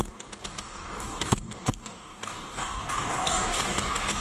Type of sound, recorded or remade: remade